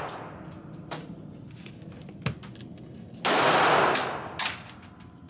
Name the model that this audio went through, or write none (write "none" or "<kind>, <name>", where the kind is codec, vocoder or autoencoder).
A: none